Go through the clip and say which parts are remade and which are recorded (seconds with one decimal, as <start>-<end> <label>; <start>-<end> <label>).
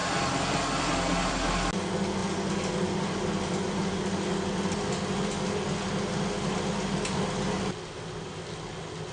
0.0-9.1 recorded